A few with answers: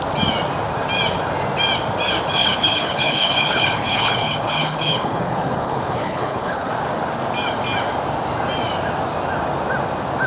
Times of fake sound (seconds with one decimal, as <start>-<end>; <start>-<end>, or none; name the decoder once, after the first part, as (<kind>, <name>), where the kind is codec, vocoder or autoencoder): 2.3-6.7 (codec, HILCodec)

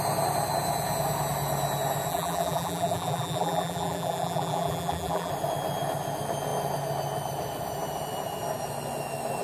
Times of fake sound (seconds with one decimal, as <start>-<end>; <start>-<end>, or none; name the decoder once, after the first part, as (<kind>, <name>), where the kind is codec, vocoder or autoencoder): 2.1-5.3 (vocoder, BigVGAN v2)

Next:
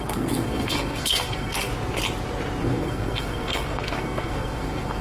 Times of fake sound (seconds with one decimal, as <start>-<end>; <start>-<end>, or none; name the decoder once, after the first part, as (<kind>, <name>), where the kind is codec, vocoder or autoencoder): 0.0-1.7 (codec, SNAC); 2.6-5.0

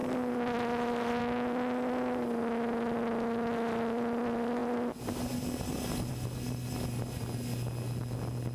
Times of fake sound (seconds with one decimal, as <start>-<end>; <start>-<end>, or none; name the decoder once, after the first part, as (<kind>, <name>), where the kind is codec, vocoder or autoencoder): none